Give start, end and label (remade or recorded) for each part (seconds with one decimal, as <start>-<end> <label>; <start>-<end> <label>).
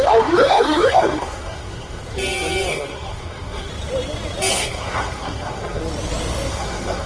0.0-2.0 remade; 2.0-2.7 recorded; 2.7-3.7 remade; 3.7-4.5 recorded; 4.5-5.8 remade; 5.8-6.5 recorded; 6.5-7.1 remade